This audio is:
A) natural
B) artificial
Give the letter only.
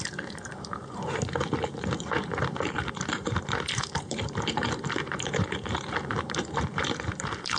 B